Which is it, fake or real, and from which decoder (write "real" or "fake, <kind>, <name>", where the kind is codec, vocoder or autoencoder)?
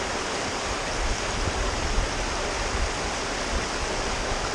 real